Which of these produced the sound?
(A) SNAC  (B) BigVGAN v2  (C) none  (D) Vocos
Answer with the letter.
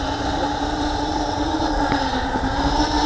B